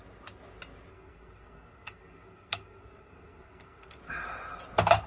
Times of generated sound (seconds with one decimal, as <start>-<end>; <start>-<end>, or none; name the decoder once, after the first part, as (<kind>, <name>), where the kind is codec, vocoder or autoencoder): 0.9-4.0 (codec, SNAC)